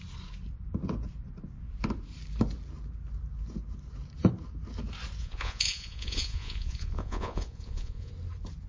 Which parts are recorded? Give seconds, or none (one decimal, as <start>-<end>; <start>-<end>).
0.0-5.2; 8.1-8.7